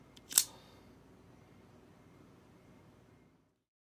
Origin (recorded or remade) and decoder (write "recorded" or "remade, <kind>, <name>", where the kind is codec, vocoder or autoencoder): recorded